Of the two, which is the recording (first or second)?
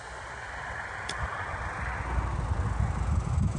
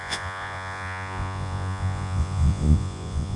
first